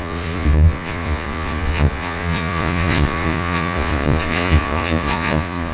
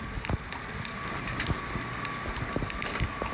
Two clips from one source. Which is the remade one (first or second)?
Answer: first